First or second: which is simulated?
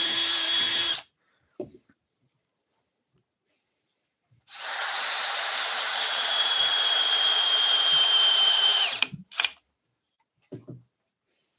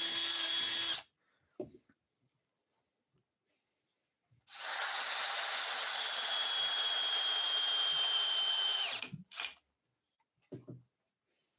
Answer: first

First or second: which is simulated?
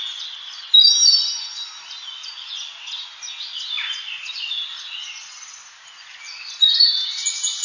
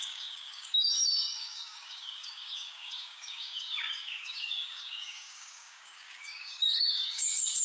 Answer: second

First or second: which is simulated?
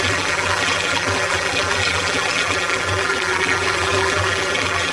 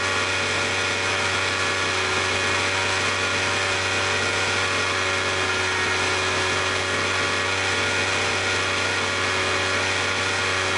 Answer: first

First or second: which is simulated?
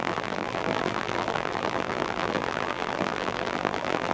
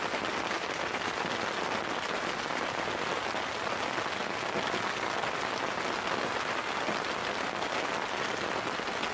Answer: first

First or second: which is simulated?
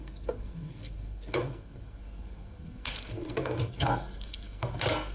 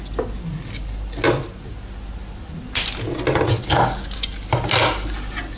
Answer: first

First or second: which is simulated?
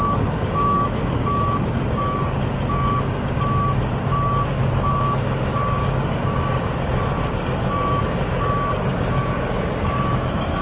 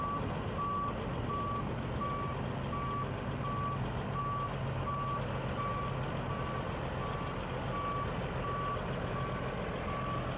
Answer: first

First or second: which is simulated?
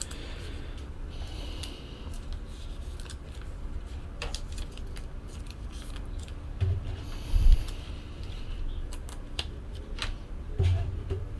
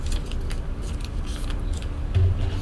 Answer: first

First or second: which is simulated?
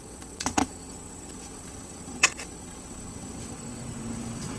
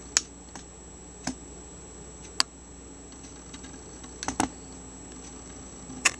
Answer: first